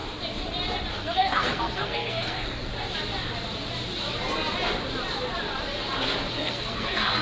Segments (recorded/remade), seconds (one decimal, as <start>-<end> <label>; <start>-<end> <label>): 0.0-0.9 recorded; 0.9-2.7 remade; 2.7-6.3 recorded; 6.3-7.2 remade